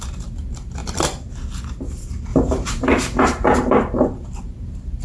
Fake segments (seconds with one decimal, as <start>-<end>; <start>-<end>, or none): 0.0-5.0